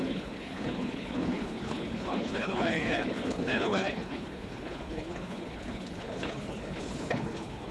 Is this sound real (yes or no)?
no